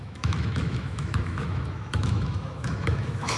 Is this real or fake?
fake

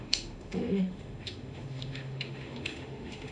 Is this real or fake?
fake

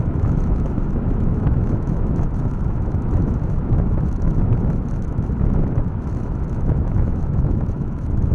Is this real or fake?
fake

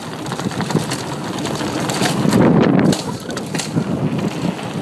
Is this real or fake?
real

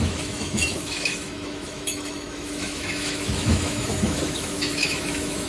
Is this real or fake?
fake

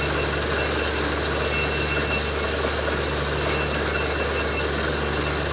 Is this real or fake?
real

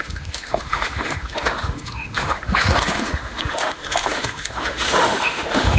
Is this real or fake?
fake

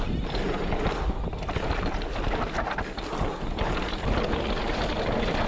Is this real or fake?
real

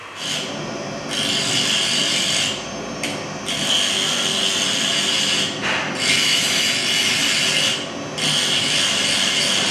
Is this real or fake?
real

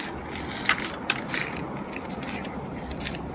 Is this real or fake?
real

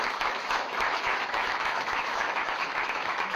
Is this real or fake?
fake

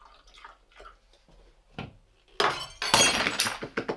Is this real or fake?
real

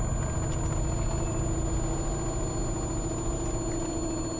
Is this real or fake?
real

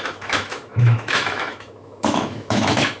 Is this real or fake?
fake